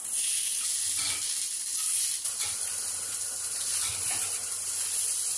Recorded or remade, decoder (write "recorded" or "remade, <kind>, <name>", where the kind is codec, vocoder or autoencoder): recorded